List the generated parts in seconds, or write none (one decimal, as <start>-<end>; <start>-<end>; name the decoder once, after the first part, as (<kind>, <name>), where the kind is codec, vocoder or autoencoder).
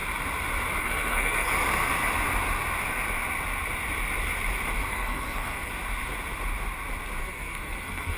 0.8-1.5 (codec, SNAC); 4.9-5.7; 7.2-8.2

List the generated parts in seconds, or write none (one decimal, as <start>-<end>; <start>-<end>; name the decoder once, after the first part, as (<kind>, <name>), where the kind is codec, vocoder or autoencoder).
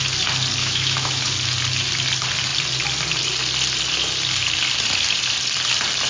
0.6-1.3 (autoencoder, DAC-VAE)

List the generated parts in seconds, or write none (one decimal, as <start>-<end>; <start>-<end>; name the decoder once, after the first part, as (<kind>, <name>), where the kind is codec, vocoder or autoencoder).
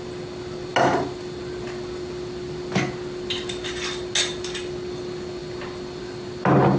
none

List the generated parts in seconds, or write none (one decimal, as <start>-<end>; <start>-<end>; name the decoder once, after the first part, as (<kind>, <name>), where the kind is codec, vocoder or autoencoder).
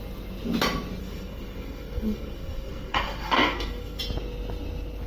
1.0-4.0 (codec, SNAC)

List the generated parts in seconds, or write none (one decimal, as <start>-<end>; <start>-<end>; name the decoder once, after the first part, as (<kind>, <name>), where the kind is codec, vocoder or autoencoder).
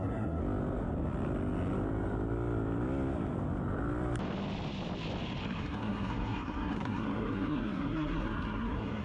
0.0-0.4 (codec, SNAC); 5.6-9.0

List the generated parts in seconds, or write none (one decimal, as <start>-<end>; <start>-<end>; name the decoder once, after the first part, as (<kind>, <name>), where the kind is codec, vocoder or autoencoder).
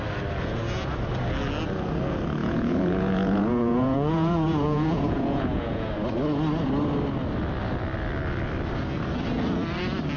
2.4-5.9 (vocoder, Vocos)